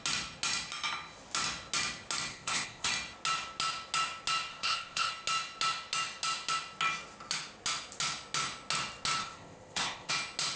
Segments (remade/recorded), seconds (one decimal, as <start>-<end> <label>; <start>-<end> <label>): 0.0-2.3 recorded; 2.3-2.9 remade; 2.9-4.5 recorded; 4.5-5.1 remade; 5.1-9.2 recorded; 9.2-10.1 remade; 10.1-10.6 recorded